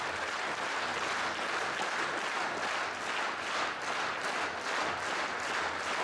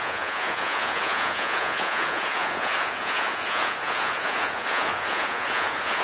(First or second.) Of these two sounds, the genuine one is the first